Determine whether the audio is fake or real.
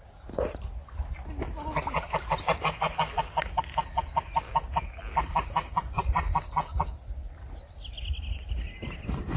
real